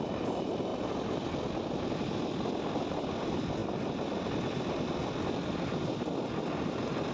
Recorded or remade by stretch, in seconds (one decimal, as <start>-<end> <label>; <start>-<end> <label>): 0.0-7.1 recorded